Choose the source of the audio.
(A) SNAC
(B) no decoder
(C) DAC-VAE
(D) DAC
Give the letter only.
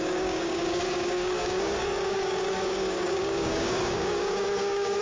D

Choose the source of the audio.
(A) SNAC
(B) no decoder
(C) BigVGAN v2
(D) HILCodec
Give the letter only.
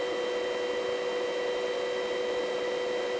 B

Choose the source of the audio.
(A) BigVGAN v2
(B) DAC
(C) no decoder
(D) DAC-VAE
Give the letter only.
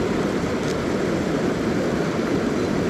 C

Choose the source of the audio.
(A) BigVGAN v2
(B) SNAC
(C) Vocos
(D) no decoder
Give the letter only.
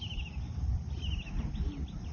D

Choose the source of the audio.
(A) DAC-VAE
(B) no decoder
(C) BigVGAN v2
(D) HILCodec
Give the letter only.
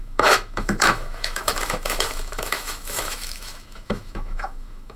A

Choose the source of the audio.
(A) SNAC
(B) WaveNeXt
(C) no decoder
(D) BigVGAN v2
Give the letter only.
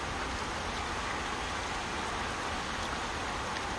C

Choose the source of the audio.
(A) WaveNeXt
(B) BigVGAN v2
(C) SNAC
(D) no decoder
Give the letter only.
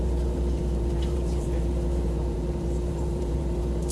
B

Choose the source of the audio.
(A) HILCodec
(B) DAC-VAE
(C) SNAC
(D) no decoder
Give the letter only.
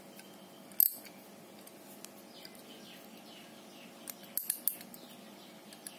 D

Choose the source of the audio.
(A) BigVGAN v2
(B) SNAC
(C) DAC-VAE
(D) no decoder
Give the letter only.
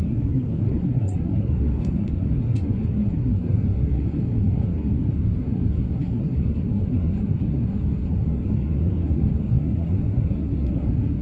B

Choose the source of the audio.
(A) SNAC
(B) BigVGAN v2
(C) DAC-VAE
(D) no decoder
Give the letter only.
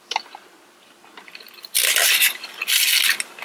D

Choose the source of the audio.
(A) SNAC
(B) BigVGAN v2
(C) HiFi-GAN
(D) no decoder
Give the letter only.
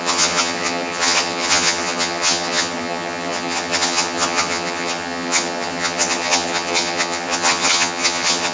C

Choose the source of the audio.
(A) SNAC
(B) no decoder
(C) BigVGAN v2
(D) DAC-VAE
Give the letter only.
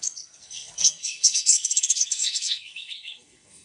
A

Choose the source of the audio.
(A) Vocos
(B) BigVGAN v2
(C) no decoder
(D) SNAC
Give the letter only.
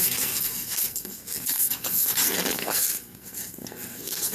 D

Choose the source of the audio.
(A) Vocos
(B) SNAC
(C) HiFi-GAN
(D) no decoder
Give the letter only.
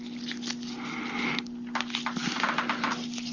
D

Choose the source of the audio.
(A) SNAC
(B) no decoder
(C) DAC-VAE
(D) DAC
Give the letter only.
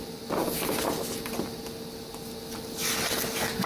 B